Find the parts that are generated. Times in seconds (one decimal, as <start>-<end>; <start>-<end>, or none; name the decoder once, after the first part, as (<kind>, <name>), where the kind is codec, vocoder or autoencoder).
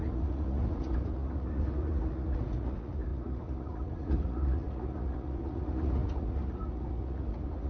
0.0-7.7 (vocoder, Vocos)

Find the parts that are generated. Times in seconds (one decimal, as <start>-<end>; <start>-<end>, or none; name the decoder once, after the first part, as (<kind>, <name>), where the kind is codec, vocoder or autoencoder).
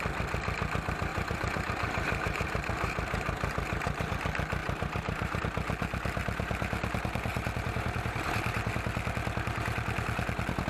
1.1-4.1 (vocoder, BigVGAN v2); 4.6-5.4; 7.3-8.7